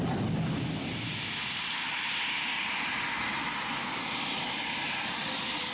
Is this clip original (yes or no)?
yes